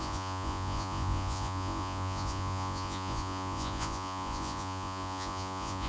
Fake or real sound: fake